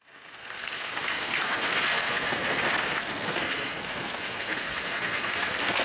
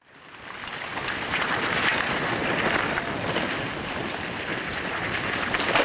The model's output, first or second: first